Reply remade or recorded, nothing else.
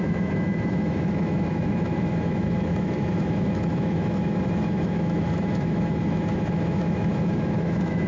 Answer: remade